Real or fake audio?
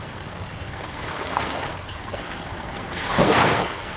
fake